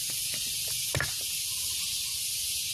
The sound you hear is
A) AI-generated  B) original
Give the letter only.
B